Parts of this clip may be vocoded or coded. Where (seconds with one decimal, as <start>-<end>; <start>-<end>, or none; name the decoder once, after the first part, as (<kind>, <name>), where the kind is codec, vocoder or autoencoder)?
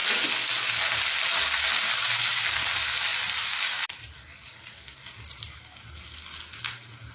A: none